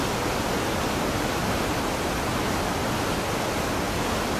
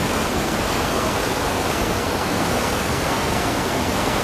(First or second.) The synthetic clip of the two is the second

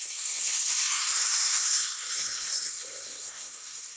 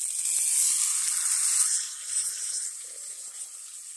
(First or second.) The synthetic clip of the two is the first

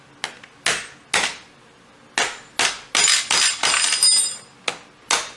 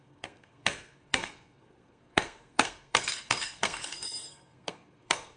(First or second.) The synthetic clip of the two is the second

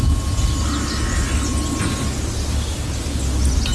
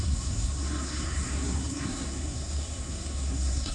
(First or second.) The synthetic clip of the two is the second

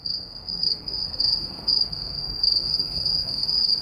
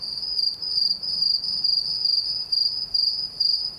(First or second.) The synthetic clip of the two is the first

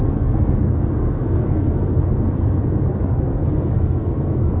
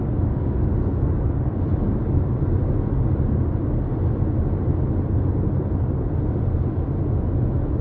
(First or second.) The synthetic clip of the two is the first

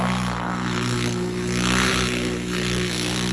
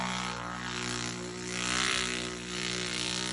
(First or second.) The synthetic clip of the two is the first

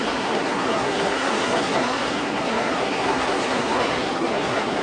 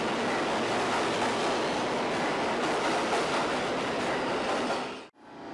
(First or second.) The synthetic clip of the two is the first